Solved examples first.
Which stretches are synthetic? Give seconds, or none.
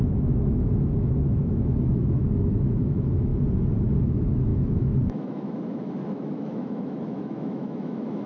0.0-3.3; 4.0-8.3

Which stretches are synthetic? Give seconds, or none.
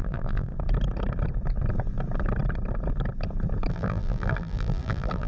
0.0-0.5; 3.7-5.3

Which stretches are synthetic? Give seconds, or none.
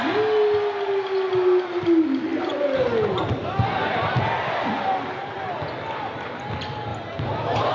none